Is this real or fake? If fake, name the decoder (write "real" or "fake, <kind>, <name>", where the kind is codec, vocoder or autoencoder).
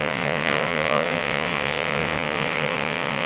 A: fake, vocoder, WaveNeXt